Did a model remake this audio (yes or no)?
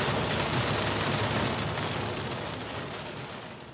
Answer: no